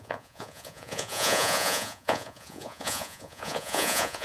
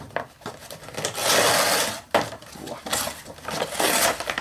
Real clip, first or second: second